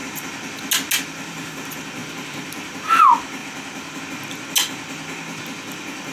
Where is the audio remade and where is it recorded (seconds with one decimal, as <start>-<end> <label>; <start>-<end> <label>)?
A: 0.0-6.1 recorded